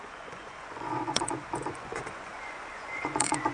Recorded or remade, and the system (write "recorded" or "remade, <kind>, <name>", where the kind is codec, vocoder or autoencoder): remade, vocoder, Vocos